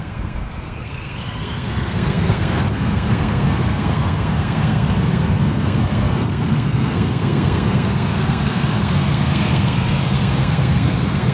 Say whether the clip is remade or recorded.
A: remade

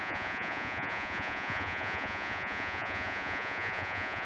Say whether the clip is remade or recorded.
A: remade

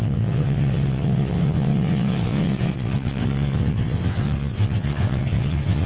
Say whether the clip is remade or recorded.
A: remade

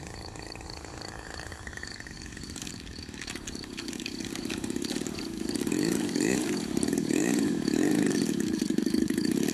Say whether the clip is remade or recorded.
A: remade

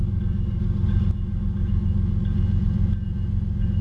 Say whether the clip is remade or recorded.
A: recorded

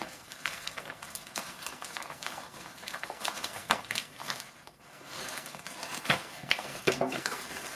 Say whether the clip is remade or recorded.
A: remade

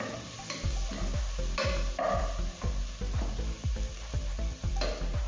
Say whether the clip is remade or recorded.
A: recorded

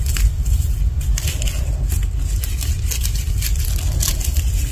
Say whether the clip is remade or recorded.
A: recorded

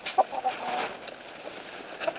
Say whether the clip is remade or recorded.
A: recorded